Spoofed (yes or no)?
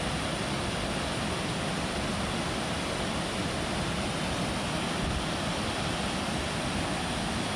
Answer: no